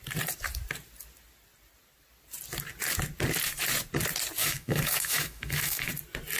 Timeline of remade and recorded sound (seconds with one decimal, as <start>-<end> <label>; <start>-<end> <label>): 0.0-4.4 recorded; 4.4-5.9 remade; 5.9-6.4 recorded